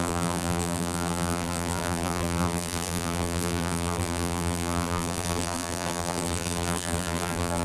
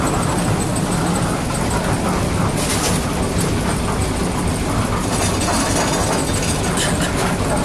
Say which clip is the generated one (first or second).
first